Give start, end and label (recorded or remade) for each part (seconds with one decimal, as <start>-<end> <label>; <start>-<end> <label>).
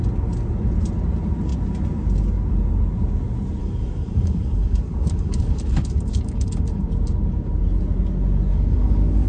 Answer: 0.0-3.6 recorded; 3.6-6.8 remade; 6.8-8.5 recorded; 8.5-9.3 remade